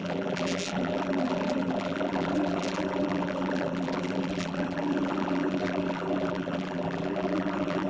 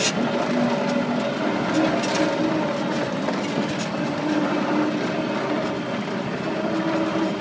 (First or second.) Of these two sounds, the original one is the second